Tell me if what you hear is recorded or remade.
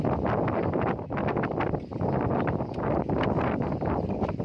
recorded